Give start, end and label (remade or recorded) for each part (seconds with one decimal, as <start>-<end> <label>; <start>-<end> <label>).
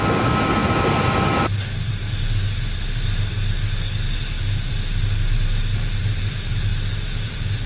0.0-7.7 recorded